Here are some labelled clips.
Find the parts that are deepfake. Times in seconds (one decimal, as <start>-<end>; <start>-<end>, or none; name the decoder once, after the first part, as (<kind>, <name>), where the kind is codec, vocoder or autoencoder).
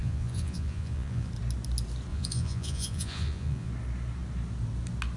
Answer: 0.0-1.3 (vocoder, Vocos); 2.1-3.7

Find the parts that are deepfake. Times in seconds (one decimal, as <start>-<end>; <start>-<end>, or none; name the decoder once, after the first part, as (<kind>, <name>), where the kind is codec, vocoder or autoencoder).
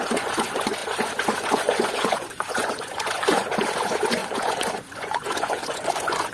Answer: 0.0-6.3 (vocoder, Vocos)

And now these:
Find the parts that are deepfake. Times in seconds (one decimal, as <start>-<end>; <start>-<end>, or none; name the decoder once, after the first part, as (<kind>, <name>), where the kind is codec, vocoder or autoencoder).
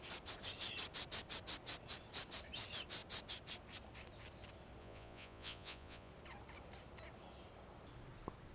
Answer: 4.8-6.1 (vocoder, Vocos)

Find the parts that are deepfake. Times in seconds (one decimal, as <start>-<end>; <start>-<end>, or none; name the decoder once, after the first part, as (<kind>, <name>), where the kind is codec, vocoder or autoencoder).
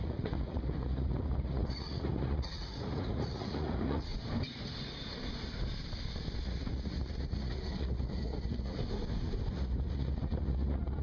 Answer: 0.0-4.1 (vocoder, Vocos); 6.4-8.8; 9.5-11.0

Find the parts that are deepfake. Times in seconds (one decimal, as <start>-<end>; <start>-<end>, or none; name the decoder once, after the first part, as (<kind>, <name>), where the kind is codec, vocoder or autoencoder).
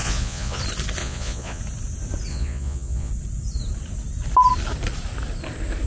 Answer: 0.0-0.6 (vocoder, Vocos); 1.0-1.6; 2.3-3.1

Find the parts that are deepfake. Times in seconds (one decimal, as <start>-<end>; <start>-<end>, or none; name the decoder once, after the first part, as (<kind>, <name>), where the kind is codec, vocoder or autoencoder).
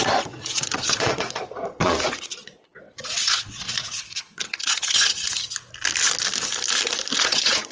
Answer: 0.0-5.3 (vocoder, Vocos); 7.2-7.7